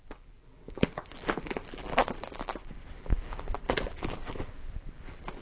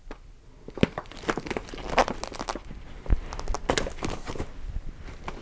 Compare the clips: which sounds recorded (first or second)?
second